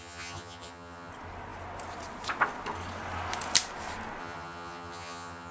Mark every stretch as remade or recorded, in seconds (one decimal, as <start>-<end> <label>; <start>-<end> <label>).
0.0-1.1 remade; 1.1-4.2 recorded; 4.2-5.5 remade